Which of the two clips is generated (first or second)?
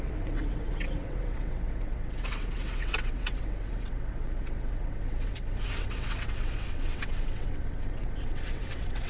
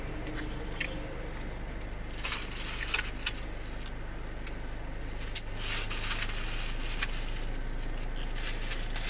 first